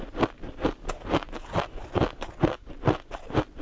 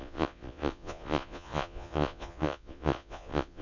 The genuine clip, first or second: first